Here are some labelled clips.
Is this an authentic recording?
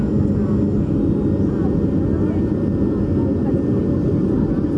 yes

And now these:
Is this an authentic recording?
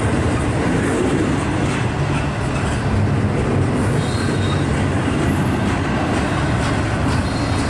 yes